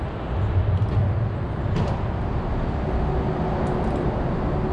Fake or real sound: real